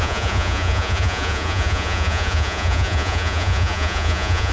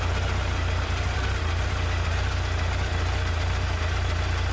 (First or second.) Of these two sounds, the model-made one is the first